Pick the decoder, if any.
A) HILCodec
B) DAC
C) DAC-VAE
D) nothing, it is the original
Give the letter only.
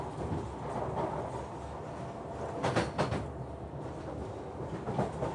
D